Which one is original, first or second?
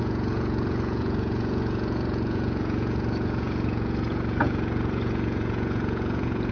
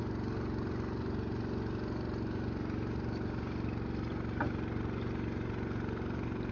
second